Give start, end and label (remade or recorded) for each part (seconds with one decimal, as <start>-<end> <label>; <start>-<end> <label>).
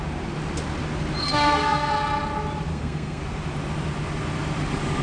0.0-1.2 recorded; 1.2-1.9 remade; 1.9-2.7 recorded; 2.7-3.2 remade; 3.2-5.0 recorded